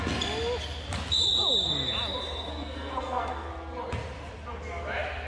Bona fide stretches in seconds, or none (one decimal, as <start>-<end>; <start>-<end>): 0.0-2.5; 3.5-5.3